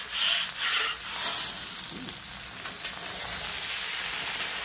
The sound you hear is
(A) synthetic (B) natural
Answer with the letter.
B